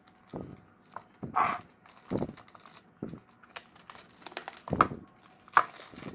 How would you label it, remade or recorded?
recorded